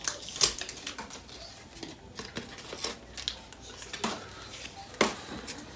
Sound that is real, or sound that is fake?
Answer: real